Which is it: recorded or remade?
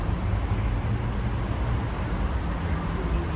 recorded